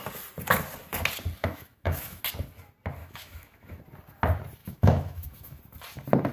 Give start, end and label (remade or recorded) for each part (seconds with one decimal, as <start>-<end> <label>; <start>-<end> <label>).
0.0-1.4 recorded; 1.4-2.2 remade; 2.2-3.0 recorded; 3.0-3.8 remade; 3.8-4.6 recorded; 4.6-5.6 remade; 5.6-6.3 recorded